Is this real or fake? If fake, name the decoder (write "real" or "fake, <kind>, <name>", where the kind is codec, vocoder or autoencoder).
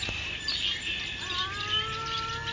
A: real